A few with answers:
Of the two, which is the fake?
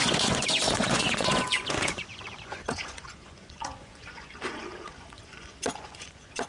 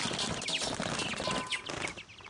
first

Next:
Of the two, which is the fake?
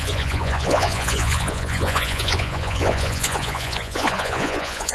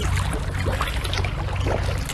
first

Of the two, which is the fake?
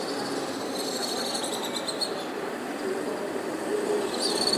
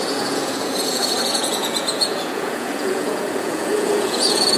second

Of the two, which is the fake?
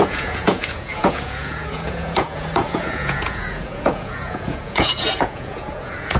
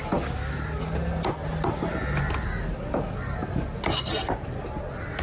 first